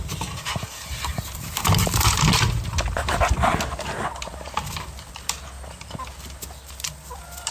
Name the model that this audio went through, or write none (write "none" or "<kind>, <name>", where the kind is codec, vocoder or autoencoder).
none